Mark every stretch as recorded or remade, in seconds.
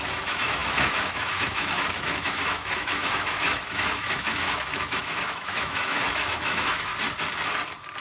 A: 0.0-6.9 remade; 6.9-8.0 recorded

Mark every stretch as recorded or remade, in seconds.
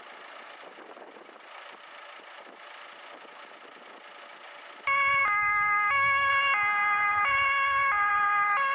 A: 0.0-5.2 recorded; 5.2-6.3 remade; 6.3-8.7 recorded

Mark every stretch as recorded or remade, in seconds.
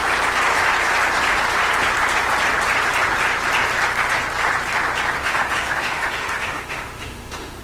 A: 0.0-5.2 recorded; 5.2-7.6 remade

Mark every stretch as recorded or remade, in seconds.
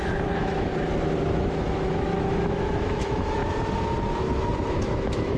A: 0.0-0.7 remade; 0.7-1.5 recorded; 1.5-3.4 remade; 3.4-4.7 recorded; 4.7-5.4 remade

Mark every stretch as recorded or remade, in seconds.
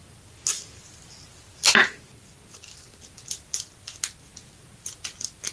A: 0.0-5.5 recorded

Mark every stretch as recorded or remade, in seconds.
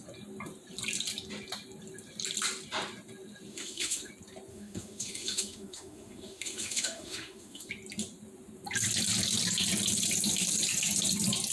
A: 0.0-3.5 recorded; 3.5-4.1 remade; 4.1-4.5 recorded; 4.5-7.7 remade; 7.7-11.5 recorded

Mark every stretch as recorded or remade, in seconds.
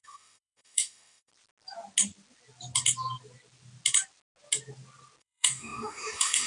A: 0.0-1.3 remade; 1.3-5.2 recorded; 5.2-6.5 remade